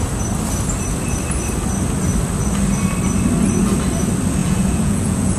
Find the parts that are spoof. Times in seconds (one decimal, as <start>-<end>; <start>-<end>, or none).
4.4-5.4